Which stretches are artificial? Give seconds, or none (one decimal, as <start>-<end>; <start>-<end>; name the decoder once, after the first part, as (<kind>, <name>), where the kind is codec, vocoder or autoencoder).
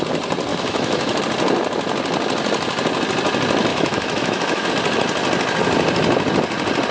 0.5-1.2 (autoencoder, DAC-VAE); 3.7-4.7